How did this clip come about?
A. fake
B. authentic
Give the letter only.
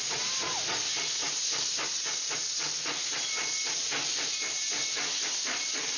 B